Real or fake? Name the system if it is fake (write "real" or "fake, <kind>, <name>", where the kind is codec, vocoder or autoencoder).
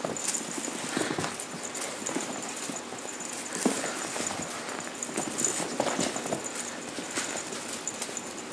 real